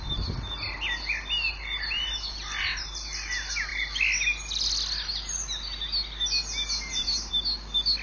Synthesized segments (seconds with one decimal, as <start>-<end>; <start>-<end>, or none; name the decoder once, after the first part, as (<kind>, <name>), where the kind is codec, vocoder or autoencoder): none